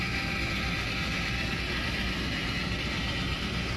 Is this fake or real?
real